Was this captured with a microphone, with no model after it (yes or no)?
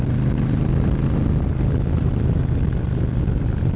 yes